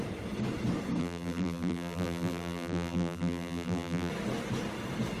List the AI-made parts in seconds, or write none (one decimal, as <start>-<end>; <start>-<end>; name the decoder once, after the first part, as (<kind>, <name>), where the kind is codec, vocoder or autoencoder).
1.0-4.1 (vocoder, BigVGAN v2)